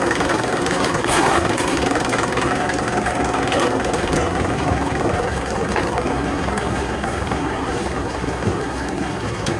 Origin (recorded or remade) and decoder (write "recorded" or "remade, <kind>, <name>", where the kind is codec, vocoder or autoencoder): remade, codec, SNAC